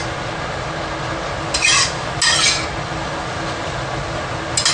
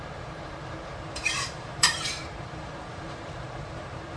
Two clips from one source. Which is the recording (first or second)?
first